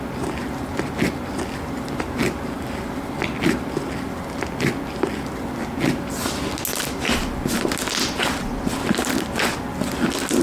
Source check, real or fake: real